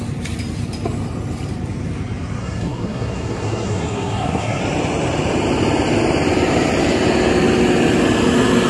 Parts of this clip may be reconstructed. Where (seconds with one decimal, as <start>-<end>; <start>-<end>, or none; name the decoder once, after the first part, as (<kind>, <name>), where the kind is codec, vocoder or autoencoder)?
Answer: 2.4-4.6 (codec, SNAC)